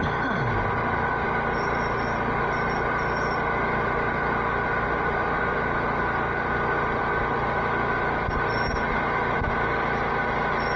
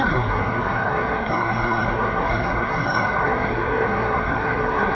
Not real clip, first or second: second